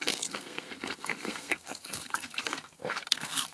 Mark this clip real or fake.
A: fake